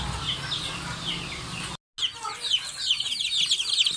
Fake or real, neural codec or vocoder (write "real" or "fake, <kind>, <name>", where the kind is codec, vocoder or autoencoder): real